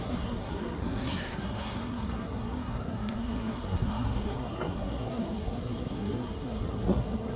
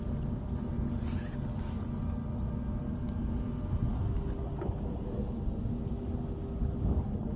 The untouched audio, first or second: second